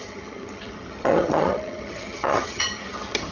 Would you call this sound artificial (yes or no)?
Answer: yes